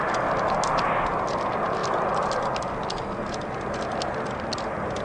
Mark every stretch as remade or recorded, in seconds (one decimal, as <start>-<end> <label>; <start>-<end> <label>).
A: 0.0-5.0 recorded